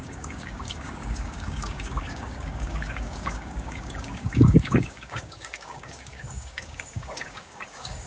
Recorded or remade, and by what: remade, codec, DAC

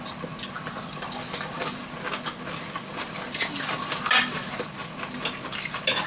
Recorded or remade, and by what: recorded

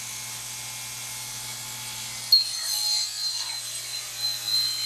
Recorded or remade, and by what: recorded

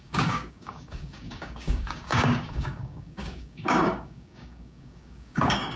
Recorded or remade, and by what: remade, codec, DAC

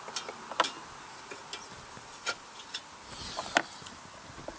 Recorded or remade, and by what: recorded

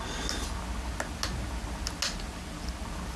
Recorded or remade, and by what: recorded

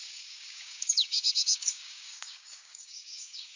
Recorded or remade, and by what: remade, codec, DAC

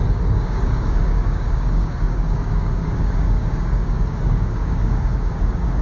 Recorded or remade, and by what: remade, codec, DAC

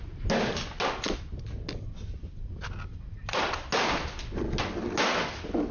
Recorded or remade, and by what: recorded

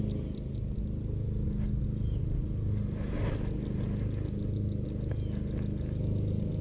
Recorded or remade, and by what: recorded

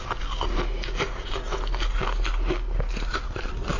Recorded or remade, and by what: recorded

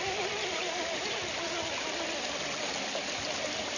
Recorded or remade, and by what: recorded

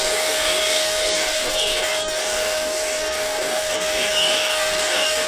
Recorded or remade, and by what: remade, codec, DAC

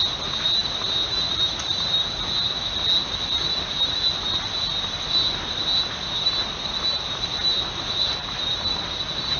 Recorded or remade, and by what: recorded